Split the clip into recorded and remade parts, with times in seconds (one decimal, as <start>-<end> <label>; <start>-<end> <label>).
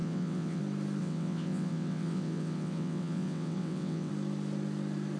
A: 0.0-0.6 remade; 0.6-1.0 recorded; 1.0-4.1 remade; 4.1-5.2 recorded